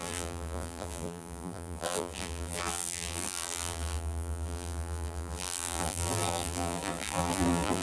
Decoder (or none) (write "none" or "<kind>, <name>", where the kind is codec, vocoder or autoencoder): vocoder, BigVGAN v2